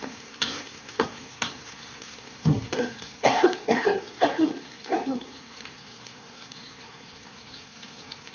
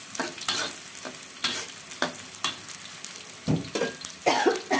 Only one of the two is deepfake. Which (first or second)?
first